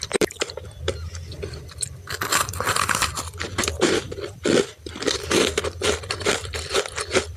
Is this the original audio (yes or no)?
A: no